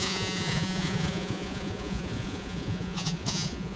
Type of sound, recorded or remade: remade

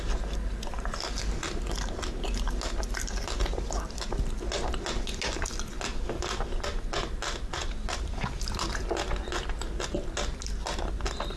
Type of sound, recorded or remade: recorded